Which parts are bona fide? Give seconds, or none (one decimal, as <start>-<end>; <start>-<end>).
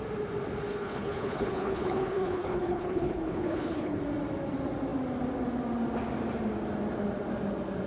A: 0.0-0.7; 4.0-7.9